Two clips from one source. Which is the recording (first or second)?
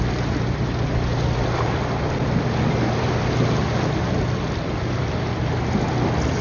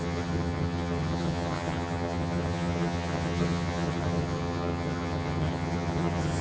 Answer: first